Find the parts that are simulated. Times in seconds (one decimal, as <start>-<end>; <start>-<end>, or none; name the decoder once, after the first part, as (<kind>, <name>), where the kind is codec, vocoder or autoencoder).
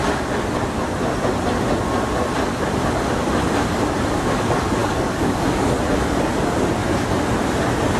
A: 4.8-5.8 (codec, DAC)